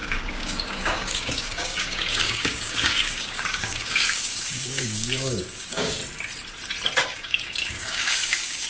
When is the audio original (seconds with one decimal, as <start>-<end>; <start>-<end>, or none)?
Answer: 6.0-7.0